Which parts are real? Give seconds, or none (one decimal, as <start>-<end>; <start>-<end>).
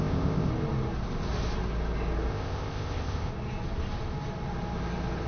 0.5-2.3; 3.3-5.3